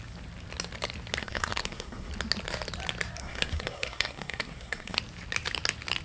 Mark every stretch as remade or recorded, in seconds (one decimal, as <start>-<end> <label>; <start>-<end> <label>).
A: 0.0-1.2 recorded; 1.2-2.1 remade; 2.1-3.2 recorded; 3.2-5.0 remade; 5.0-6.0 recorded